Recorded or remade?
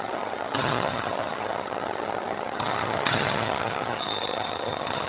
remade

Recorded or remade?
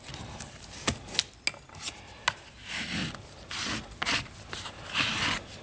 recorded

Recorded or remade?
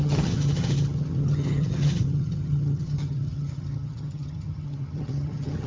remade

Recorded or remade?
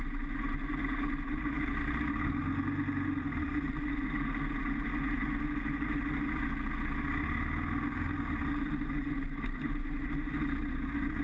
recorded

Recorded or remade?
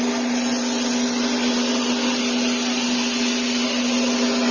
recorded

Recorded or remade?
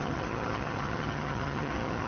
remade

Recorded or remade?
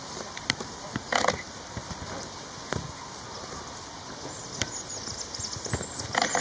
recorded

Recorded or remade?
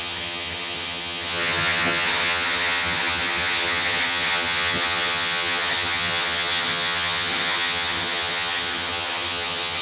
remade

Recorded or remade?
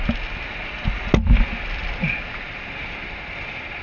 recorded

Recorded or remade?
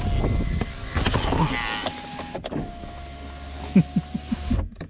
recorded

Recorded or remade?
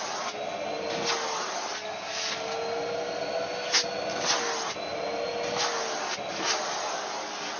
recorded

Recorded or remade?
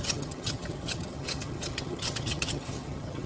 remade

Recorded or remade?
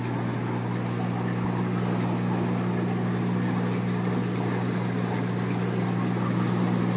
recorded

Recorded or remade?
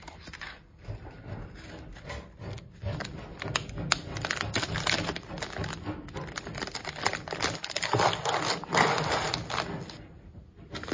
recorded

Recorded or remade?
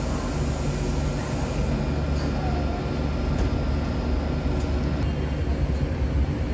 recorded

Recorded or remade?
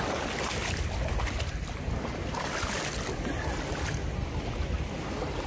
recorded